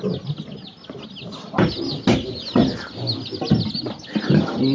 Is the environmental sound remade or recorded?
recorded